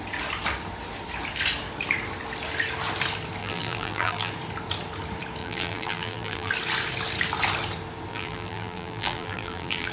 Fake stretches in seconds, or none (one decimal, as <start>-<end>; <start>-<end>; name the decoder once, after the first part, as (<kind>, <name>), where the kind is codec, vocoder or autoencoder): 3.4-4.3 (vocoder, BigVGAN v2); 5.4-6.5; 8.1-9.9